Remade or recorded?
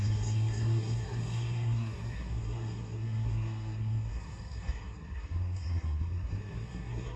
remade